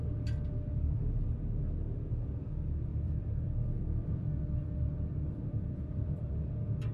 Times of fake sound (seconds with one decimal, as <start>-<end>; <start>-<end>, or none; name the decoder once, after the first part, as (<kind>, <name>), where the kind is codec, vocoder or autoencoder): 2.9-6.5 (vocoder, BigVGAN v2)